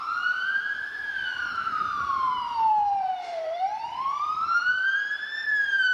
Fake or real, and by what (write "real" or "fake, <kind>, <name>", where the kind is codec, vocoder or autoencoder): fake, vocoder, BigVGAN v2